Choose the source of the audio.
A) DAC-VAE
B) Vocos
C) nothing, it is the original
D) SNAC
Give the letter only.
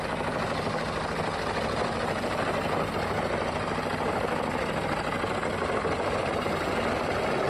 C